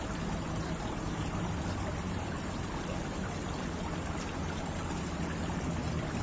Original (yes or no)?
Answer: yes